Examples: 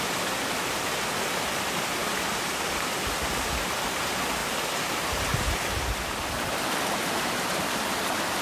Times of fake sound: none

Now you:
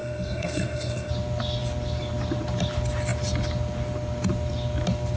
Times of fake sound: 0.0-1.1

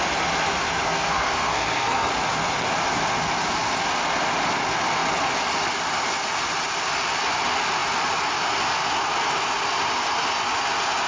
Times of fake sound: 0.9-2.1

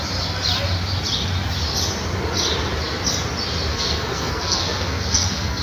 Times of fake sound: 3.7-5.6